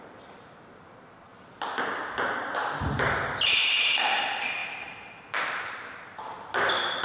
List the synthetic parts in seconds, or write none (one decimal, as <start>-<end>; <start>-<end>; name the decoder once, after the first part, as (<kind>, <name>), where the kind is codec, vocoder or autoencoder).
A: none